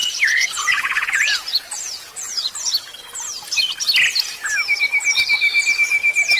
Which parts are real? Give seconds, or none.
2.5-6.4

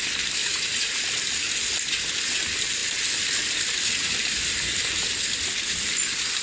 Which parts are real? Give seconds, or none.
0.0-0.4; 1.0-6.4